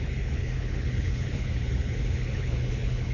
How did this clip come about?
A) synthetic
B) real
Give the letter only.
A